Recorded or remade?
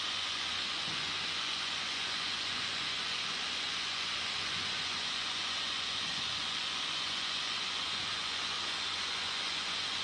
remade